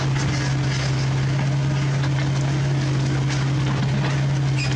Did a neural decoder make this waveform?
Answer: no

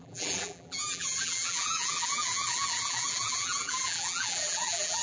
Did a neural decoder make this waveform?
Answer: yes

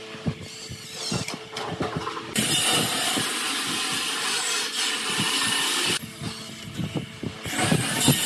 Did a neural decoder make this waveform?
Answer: no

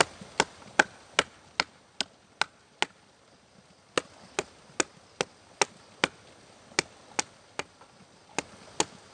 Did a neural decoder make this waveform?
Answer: no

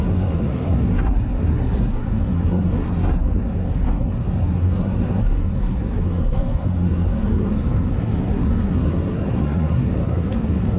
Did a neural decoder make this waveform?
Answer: yes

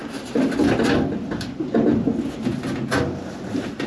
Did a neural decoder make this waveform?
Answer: no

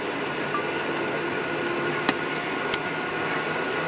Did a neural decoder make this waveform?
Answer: no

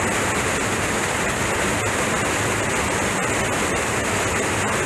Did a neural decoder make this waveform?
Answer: no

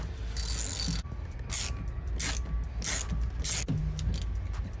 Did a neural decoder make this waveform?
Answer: no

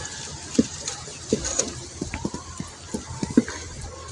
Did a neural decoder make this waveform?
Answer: yes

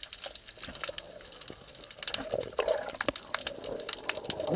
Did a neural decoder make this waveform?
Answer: no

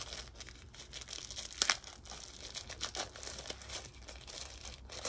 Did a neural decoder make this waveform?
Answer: no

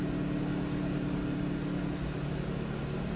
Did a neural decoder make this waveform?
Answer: no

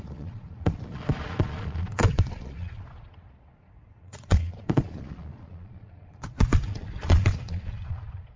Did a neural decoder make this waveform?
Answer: yes